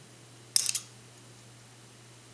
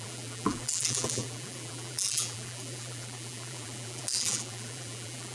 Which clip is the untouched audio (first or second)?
first